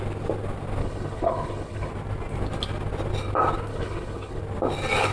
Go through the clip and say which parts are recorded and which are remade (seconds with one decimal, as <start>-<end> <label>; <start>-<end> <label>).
0.0-0.8 recorded; 0.8-1.9 remade; 1.9-3.7 recorded; 3.7-4.4 remade; 4.4-5.1 recorded